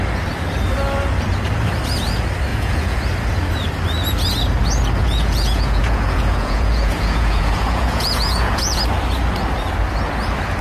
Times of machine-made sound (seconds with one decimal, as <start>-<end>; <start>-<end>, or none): 2.5-3.0; 5.0-8.8